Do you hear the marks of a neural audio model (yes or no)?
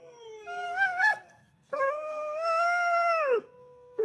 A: yes